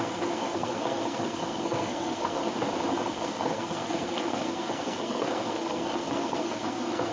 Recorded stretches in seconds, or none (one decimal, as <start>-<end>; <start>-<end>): 2.4-3.1